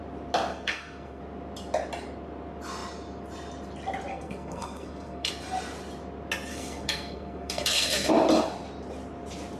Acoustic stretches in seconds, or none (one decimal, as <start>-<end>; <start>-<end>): 0.0-0.5; 1.2-4.1; 5.3-6.5; 8.1-9.6